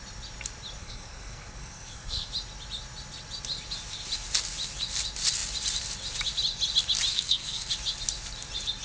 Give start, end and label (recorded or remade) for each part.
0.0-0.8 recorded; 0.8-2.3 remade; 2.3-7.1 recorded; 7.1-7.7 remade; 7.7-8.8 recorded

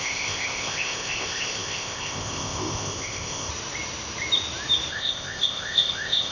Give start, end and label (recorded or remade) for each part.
0.0-3.5 remade; 3.5-4.9 recorded; 4.9-6.3 remade

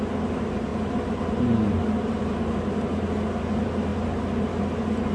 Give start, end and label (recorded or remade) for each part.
0.0-5.1 recorded

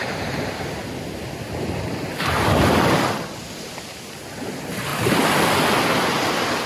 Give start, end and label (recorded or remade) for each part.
0.0-6.7 recorded

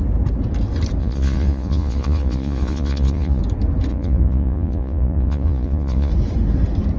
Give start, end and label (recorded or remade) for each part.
0.0-1.0 recorded; 1.0-3.4 remade; 3.4-3.9 recorded; 3.9-6.1 remade; 6.1-7.0 recorded